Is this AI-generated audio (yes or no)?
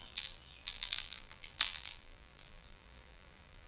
yes